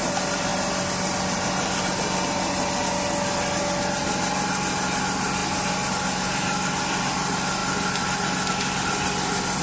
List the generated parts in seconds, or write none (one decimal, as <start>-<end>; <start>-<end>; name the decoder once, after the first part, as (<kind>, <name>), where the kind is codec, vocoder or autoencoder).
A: none